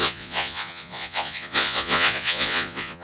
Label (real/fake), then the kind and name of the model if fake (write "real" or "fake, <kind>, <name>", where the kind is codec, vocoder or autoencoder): fake, vocoder, Vocos